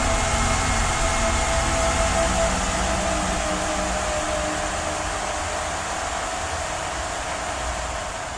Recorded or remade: recorded